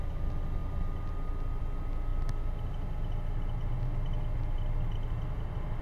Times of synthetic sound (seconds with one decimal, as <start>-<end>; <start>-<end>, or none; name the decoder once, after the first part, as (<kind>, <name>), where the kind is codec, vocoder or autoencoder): none